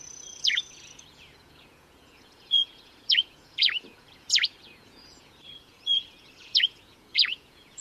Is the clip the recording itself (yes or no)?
no